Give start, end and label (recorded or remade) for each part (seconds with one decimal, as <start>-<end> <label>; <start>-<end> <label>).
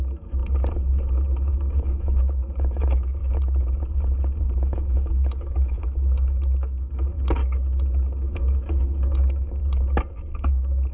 0.0-0.4 remade; 0.4-1.5 recorded; 1.5-3.2 remade; 3.2-4.4 recorded; 4.4-7.4 remade; 7.4-8.2 recorded; 8.2-9.6 remade; 9.6-10.3 recorded; 10.3-10.9 remade